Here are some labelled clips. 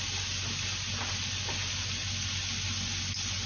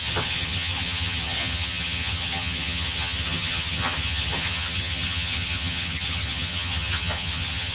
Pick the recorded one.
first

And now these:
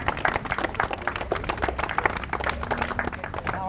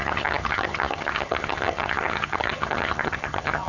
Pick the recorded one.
first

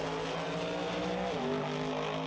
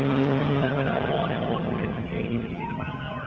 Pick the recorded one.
first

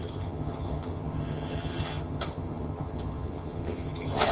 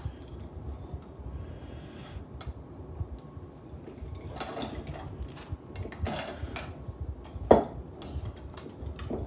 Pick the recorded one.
second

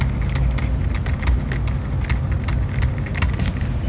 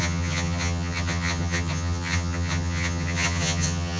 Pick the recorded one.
first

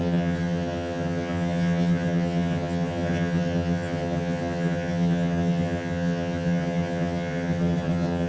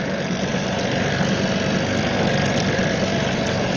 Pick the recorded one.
second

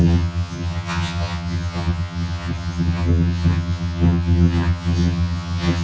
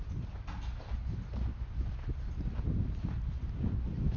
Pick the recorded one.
second